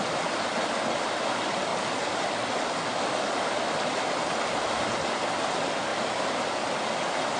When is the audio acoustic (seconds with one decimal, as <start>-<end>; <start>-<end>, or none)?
0.0-7.4